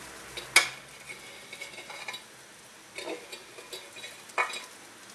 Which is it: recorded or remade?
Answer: recorded